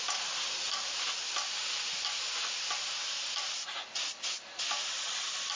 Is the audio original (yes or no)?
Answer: yes